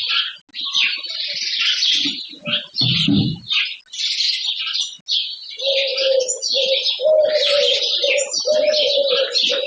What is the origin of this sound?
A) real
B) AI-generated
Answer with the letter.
A